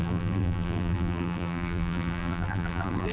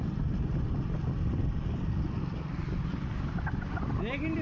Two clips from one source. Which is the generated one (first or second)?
first